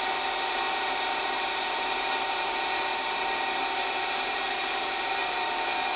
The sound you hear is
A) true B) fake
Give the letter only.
B